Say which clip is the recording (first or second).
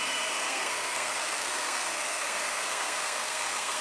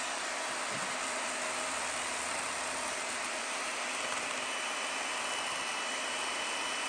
second